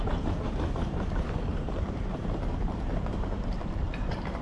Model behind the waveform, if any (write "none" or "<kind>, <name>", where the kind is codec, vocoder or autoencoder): vocoder, BigVGAN v2